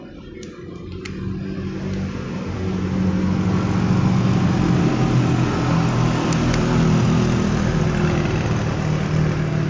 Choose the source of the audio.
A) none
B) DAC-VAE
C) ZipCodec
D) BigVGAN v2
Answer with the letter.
A